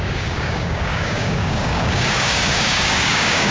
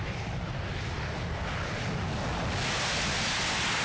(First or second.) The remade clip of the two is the first